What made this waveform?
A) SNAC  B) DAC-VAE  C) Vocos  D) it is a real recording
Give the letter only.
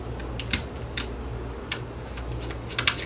D